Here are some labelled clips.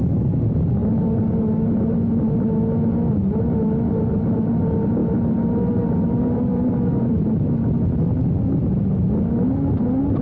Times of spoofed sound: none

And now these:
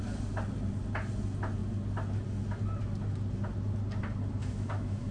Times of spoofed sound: 4.4-5.1 (autoencoder, DAC-VAE)